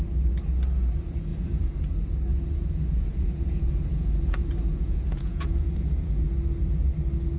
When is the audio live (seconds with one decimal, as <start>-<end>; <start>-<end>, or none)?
0.0-1.3; 1.8-2.3; 6.2-7.4